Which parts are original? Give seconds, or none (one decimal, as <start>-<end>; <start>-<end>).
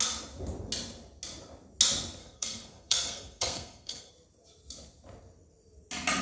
0.0-2.2; 4.1-6.2